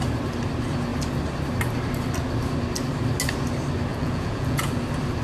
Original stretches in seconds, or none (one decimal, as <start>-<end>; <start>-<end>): 0.0-3.9; 4.7-5.2